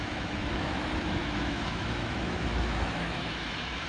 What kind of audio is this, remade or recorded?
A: remade